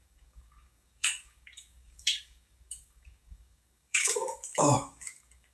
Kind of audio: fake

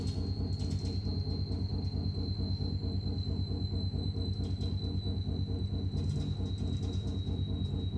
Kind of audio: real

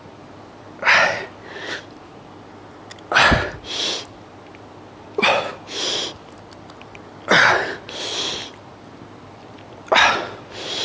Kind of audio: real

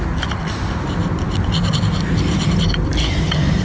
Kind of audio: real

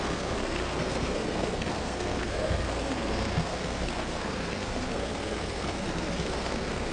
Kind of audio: fake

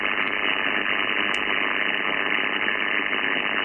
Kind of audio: real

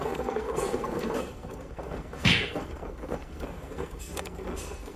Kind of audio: fake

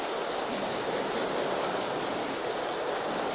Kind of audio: real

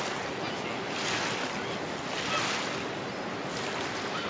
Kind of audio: real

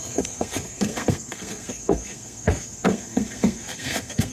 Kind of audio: fake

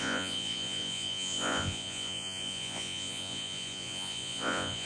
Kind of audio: fake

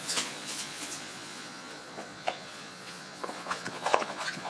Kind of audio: fake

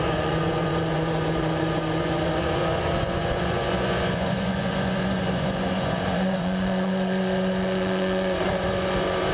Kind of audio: fake